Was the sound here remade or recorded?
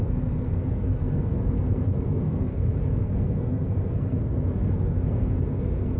remade